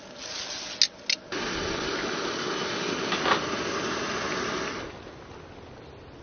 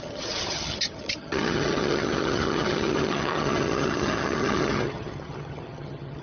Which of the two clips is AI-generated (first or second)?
second